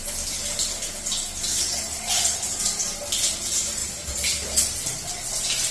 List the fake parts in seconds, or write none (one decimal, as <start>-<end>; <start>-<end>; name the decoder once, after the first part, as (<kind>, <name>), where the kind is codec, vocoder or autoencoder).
none